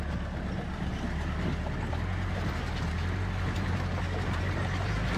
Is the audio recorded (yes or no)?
yes